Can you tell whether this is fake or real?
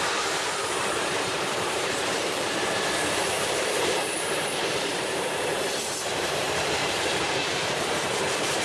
fake